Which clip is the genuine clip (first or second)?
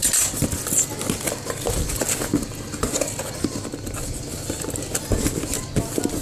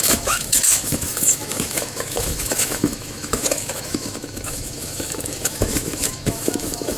first